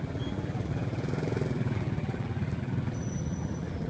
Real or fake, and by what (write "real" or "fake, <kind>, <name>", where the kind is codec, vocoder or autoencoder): fake, vocoder, BigVGAN v2